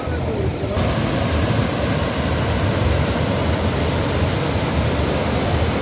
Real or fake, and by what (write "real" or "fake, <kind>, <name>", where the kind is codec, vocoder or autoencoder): real